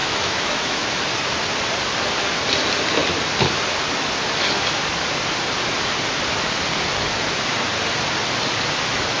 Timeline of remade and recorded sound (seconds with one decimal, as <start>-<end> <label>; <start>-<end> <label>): 0.0-0.9 remade; 0.9-9.2 recorded